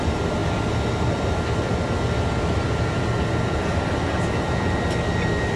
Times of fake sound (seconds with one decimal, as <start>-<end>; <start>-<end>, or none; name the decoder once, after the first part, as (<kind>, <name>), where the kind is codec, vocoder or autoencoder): none